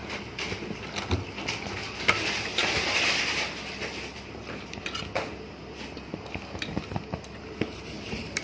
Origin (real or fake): real